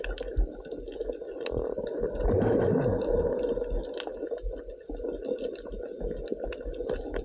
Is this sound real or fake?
real